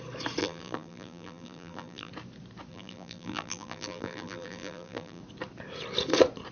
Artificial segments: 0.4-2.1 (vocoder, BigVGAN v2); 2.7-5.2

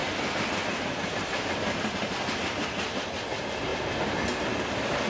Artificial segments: none

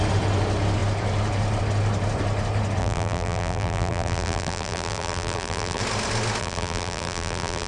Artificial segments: 2.8-5.8 (vocoder, BigVGAN v2); 6.4-7.7

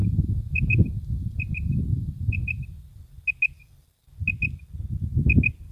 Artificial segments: 0.0-0.8 (vocoder, BigVGAN v2); 1.9-2.6

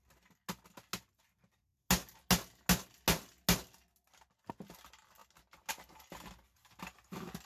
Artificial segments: none